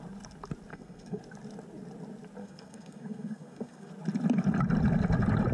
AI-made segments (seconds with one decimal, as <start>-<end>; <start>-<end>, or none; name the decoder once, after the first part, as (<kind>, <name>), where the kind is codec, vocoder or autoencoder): 0.7-1.2 (codec, SNAC); 2.4-3.9